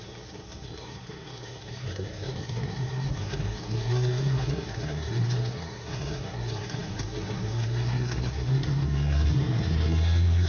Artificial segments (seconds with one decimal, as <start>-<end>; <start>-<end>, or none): 0.0-10.5